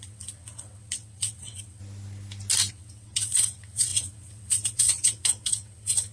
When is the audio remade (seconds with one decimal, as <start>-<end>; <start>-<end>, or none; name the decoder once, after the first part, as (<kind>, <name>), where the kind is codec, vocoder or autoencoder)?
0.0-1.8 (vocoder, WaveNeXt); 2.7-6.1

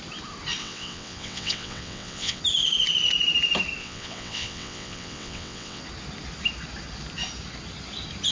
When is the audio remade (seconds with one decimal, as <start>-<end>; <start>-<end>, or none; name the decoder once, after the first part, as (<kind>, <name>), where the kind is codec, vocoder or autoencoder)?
0.6-2.4 (vocoder, WaveNeXt); 3.8-5.8

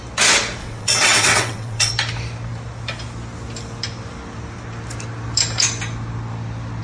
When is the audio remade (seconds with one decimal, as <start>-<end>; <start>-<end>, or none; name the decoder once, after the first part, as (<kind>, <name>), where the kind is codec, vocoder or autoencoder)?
0.6-1.9 (vocoder, WaveNeXt)